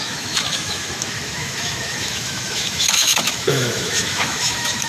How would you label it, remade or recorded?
remade